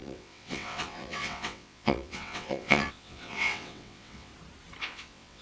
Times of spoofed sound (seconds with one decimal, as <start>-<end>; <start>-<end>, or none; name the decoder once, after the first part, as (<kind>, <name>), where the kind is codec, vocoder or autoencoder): 0.0-4.3 (vocoder, WaveNeXt); 4.8-5.4